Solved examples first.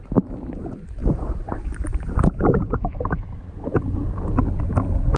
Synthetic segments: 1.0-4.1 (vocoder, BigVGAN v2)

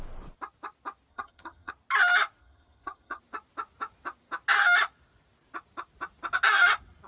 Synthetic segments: 1.1-1.7 (vocoder, HiFi-GAN); 2.4-3.2

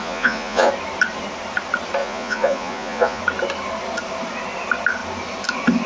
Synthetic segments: 0.0-0.7 (vocoder, Vocos); 2.0-3.2